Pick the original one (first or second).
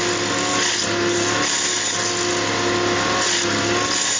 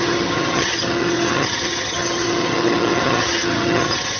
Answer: first